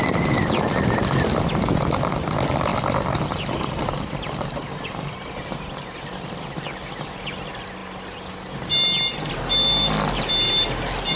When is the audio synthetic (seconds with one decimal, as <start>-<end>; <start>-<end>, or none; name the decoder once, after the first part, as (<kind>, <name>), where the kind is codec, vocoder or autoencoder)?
2.7-5.4 (vocoder, BigVGAN v2)